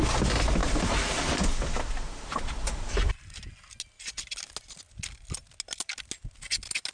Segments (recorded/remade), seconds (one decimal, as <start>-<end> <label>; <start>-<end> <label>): 0.0-6.9 recorded